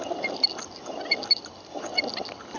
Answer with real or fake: real